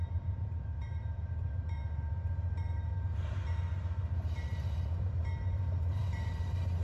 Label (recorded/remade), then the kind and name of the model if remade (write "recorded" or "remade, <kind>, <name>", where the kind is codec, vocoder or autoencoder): remade, vocoder, BigVGAN v2